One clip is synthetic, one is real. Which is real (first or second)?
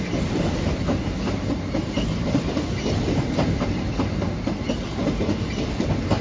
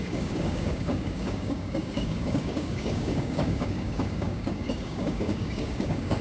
first